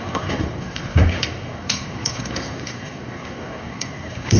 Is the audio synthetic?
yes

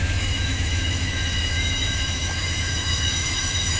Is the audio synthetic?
yes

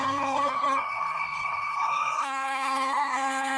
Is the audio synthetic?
yes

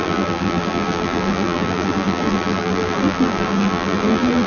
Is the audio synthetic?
yes